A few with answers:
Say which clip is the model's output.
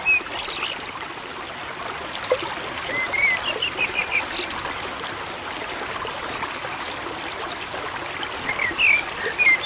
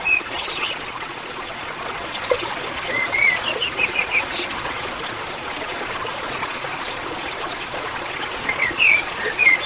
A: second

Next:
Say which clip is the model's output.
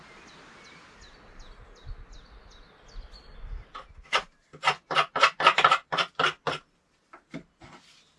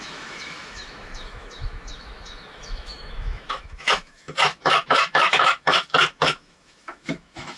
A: second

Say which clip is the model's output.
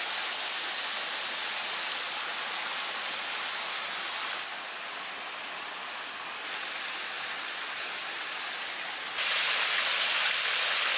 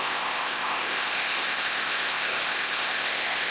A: second